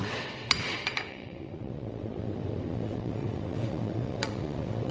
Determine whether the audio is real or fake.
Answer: fake